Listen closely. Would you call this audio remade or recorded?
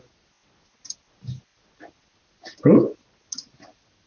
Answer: recorded